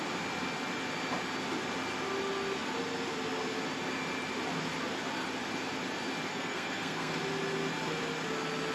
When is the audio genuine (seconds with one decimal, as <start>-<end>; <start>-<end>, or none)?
0.0-6.3; 7.1-8.7